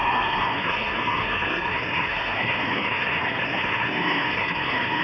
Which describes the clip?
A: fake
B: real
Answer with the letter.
A